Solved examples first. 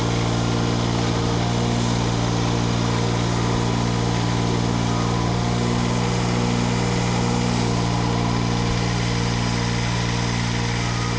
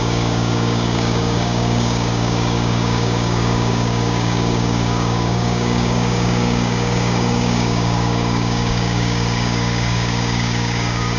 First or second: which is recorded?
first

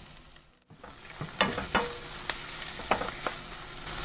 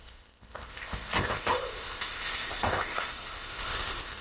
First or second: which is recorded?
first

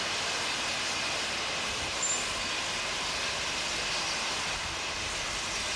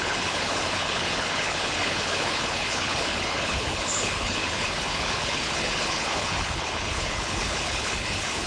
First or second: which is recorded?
first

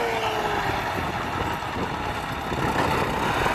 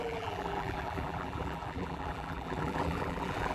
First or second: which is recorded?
first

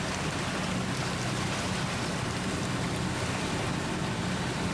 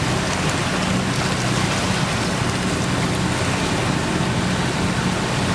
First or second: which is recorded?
second